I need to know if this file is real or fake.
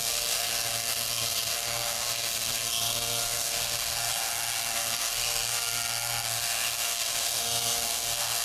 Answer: fake